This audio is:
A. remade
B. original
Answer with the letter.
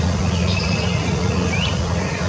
A